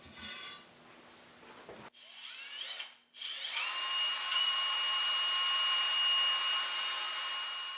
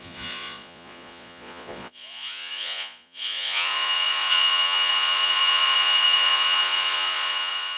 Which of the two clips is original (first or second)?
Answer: first